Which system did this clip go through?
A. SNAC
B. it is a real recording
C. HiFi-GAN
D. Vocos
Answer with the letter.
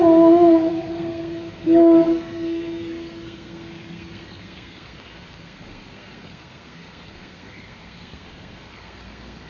A